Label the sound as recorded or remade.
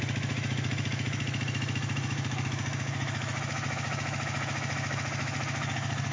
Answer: remade